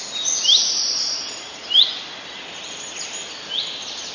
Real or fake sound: real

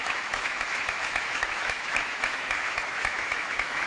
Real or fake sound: fake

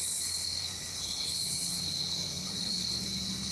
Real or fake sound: fake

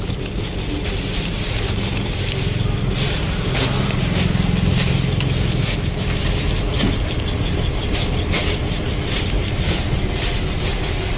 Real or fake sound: real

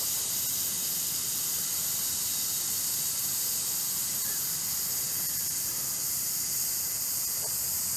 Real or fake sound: real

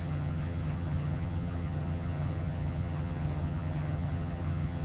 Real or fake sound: fake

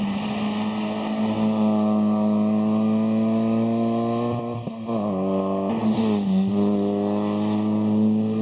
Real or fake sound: real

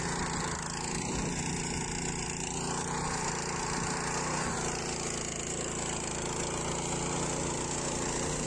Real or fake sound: real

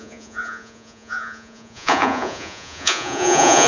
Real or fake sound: fake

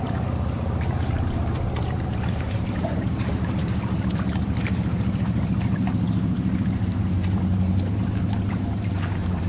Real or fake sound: fake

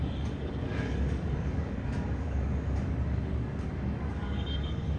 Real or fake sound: fake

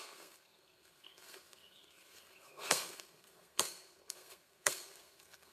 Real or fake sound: fake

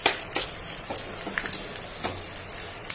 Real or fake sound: real